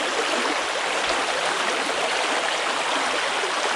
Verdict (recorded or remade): recorded